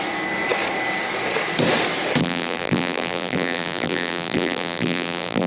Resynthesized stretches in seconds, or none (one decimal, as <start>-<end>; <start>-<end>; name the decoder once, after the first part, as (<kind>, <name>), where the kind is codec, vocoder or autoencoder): 2.2-5.5 (vocoder, BigVGAN v2)